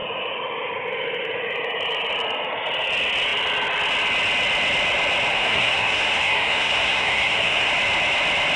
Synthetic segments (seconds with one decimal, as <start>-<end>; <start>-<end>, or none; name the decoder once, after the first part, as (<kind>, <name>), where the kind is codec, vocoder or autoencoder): 5.3-7.7 (codec, SNAC)